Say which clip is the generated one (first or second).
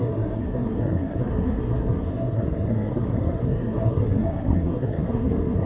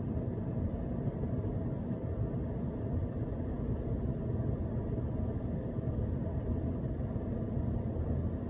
first